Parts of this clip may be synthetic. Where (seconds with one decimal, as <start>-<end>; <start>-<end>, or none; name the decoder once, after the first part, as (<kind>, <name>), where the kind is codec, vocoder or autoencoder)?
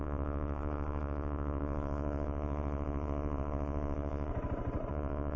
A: 0.0-4.3 (vocoder, Vocos); 4.9-5.4